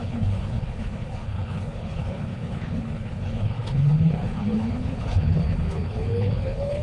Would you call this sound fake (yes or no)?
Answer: yes